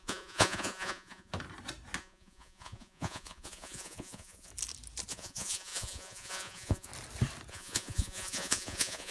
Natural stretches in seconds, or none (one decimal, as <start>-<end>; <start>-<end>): 1.3-2.0; 4.5-5.1; 6.9-7.5